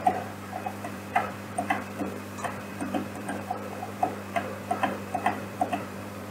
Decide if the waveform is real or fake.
fake